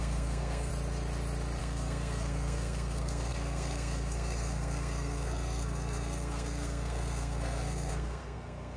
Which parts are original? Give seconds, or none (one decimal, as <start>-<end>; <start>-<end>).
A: 0.7-1.6